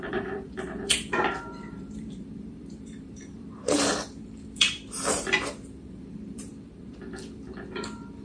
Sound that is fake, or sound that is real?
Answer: fake